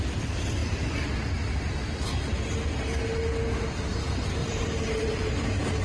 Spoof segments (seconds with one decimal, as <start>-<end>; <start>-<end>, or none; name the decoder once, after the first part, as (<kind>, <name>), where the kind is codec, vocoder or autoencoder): 4.4-5.1 (vocoder, BigVGAN v2)